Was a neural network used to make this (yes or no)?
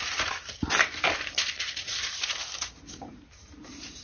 yes